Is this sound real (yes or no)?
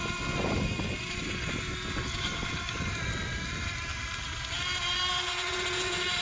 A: yes